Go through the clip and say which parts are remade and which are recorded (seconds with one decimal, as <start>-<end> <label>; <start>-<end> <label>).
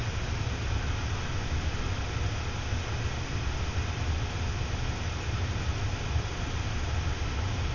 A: 0.0-7.7 recorded